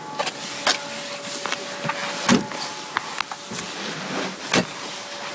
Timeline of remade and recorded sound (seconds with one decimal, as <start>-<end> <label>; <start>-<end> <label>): 0.0-5.3 recorded